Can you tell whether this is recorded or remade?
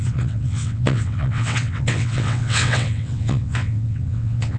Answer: remade